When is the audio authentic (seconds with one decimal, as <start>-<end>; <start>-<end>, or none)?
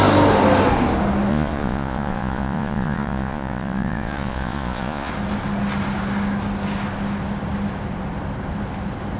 0.0-1.3; 5.1-9.2